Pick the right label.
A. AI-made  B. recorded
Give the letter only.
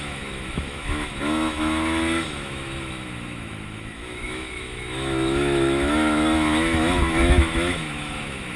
A